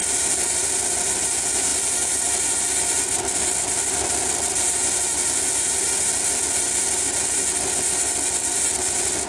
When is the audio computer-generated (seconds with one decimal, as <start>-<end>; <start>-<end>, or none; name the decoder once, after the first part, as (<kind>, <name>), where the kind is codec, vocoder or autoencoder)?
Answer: none